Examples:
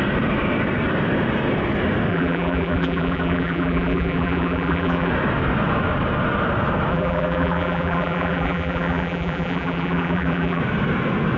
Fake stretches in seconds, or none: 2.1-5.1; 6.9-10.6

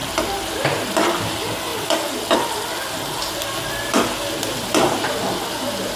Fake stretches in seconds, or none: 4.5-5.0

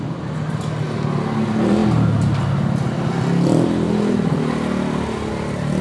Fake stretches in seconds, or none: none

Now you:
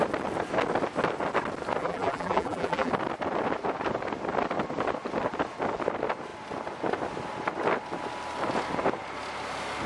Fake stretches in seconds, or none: 1.8-2.9